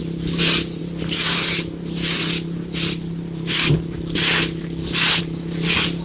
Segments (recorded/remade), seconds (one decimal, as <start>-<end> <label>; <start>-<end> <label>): 0.0-6.0 recorded

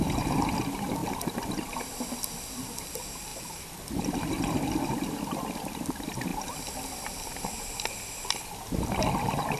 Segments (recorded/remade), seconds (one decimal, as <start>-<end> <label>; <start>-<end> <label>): 0.0-9.6 recorded

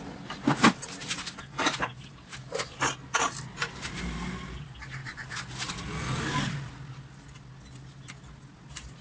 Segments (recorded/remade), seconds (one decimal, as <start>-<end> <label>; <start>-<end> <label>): 0.0-9.0 recorded

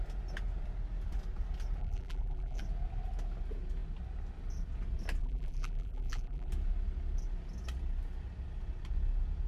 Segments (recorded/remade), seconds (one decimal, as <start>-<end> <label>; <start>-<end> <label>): 0.0-1.8 recorded; 1.8-2.6 remade; 2.6-5.2 recorded; 5.2-6.5 remade; 6.5-9.5 recorded

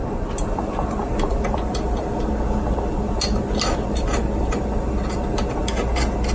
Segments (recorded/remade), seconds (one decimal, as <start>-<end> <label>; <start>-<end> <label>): 0.0-6.3 recorded